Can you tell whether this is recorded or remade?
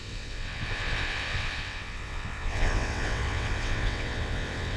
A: remade